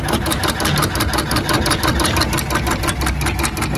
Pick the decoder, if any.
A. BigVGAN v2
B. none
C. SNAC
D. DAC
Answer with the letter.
B